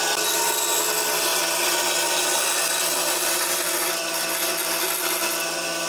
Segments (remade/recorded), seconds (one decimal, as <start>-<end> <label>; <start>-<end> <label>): 0.0-5.9 recorded